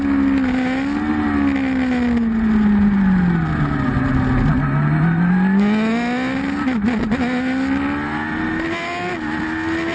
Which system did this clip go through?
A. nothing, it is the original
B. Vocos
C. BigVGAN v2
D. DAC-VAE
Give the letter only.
A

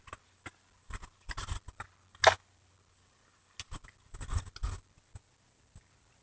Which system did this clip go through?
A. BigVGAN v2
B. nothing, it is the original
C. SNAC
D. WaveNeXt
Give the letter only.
B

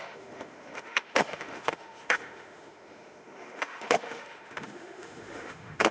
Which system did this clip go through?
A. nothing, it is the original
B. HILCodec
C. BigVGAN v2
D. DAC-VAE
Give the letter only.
D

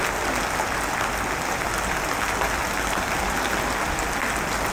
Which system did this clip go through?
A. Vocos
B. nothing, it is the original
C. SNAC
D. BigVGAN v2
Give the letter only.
B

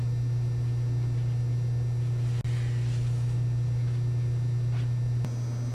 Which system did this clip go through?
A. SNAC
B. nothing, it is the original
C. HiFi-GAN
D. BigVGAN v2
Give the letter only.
B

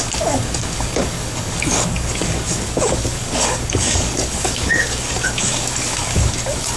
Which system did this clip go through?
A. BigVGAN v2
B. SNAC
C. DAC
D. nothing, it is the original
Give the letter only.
C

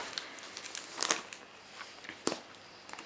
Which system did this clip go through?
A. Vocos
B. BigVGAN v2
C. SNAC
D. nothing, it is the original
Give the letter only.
D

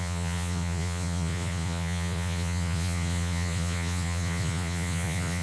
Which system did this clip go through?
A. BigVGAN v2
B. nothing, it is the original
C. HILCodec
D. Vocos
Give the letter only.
D